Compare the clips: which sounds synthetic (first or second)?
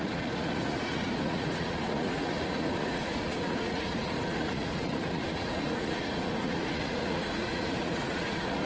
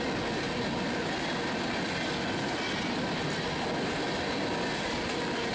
first